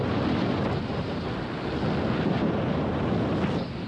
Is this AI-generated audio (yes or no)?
no